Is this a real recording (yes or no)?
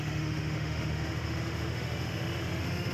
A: no